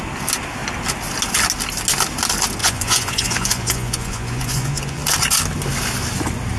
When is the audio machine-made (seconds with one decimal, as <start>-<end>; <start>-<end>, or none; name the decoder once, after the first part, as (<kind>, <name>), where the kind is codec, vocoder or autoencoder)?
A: 2.6-5.0 (vocoder, Vocos)